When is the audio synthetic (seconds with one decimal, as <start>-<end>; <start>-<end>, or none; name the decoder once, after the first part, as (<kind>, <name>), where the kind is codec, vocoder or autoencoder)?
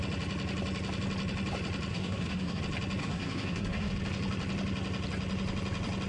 1.9-2.6 (codec, SNAC); 3.0-3.9